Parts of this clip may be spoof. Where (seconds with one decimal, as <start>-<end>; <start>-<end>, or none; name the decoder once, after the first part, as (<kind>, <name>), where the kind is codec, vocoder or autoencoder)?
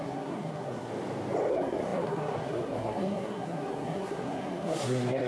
0.0-0.9 (codec, SNAC); 1.5-5.3